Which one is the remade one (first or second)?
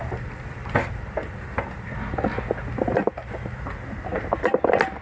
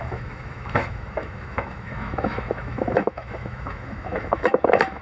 second